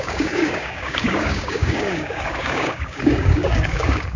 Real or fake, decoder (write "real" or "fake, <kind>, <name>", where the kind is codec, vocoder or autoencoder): fake, codec, DAC